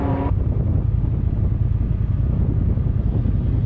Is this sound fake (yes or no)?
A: no